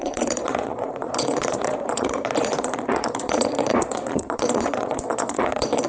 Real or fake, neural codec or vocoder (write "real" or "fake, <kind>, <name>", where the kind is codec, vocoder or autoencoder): fake, vocoder, Vocos